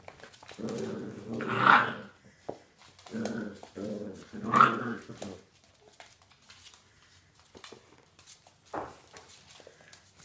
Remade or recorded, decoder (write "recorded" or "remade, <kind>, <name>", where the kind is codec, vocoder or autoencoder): recorded